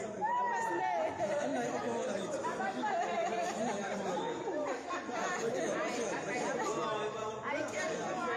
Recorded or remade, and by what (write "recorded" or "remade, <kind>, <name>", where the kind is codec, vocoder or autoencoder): recorded